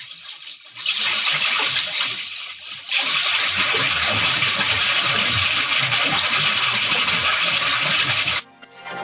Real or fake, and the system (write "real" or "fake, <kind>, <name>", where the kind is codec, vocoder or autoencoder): real